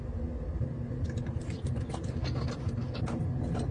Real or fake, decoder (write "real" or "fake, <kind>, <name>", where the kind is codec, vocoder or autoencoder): real